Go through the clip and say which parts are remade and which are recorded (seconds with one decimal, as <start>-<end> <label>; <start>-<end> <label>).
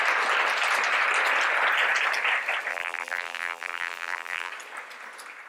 0.0-2.7 recorded; 2.7-4.5 remade; 4.5-5.5 recorded